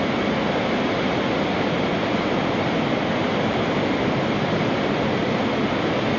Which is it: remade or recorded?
recorded